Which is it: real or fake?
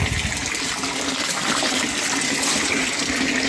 real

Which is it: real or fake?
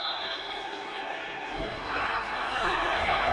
fake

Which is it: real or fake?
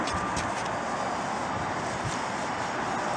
real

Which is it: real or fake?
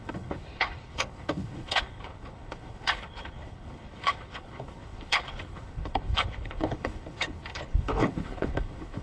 fake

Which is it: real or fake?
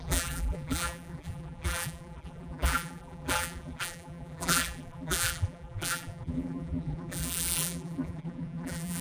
fake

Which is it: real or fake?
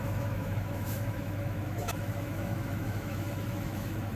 fake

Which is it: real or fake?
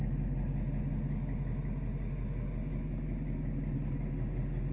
real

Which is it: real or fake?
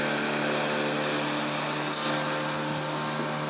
real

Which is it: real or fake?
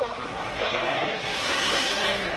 fake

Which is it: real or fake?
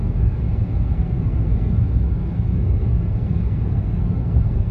fake